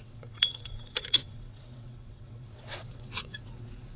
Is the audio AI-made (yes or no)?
yes